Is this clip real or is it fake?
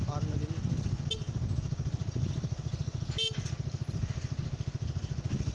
real